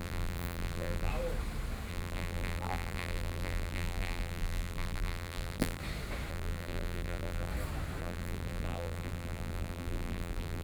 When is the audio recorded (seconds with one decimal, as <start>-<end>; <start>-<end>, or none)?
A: 1.1-1.9; 5.8-6.3; 7.5-8.0